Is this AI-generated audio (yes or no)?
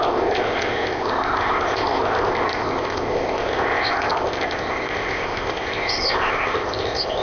yes